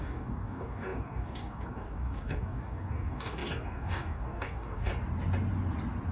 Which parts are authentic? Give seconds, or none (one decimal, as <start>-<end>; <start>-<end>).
4.9-6.1